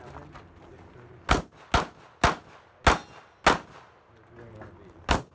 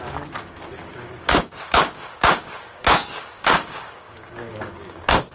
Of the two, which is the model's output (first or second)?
second